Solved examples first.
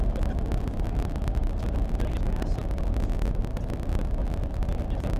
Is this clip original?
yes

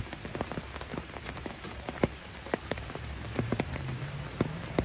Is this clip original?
no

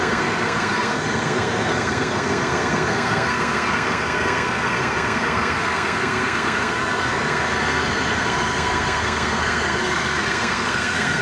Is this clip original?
no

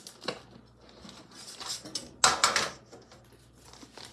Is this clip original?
yes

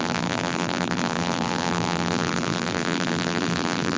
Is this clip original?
no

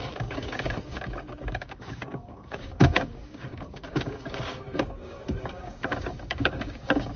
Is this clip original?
no